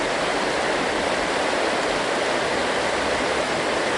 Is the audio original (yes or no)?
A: yes